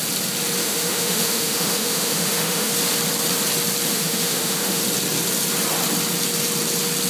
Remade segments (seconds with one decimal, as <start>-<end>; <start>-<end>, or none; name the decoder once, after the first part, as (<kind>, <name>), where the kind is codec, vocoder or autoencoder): 0.6-2.7 (autoencoder, DAC-VAE); 3.9-4.8

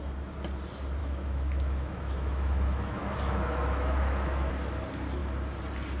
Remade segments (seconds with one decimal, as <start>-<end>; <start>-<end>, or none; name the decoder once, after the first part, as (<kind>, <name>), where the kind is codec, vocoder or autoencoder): 1.0-4.5 (autoencoder, DAC-VAE)

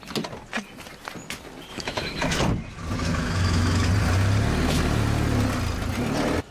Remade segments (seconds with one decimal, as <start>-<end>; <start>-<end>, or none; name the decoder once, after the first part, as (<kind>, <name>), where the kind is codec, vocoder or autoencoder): 1.7-2.4 (autoencoder, DAC-VAE); 3.1-3.9